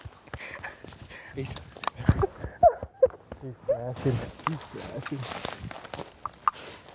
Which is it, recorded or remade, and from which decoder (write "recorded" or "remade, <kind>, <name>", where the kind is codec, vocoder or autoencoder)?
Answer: recorded